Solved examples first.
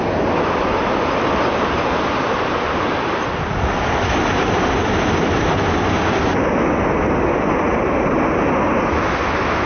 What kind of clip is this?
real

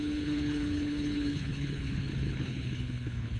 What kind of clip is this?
fake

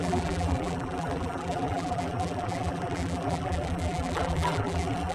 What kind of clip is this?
fake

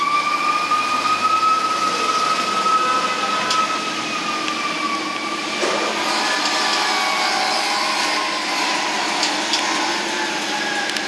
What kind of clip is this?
real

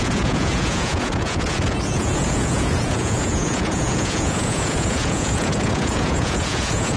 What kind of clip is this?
fake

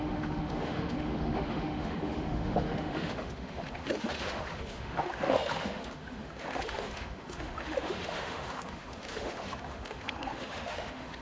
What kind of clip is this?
fake